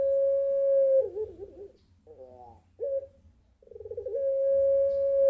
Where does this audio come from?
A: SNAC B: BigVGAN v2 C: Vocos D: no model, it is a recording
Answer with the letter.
D